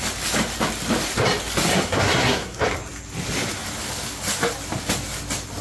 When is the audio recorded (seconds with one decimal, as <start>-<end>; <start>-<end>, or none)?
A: 0.0-1.7; 2.6-5.6